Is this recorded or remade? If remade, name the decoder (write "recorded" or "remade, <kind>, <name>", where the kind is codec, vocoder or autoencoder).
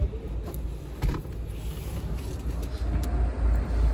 recorded